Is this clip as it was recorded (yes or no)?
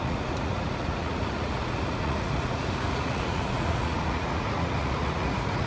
no